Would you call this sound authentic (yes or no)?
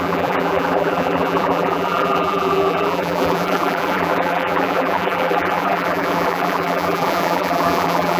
no